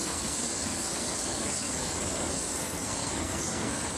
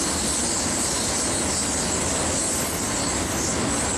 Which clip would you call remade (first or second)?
first